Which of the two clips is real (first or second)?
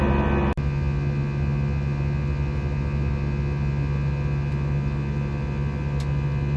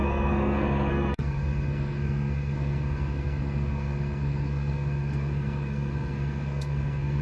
first